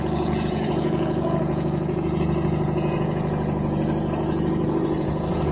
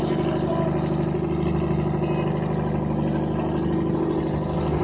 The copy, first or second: first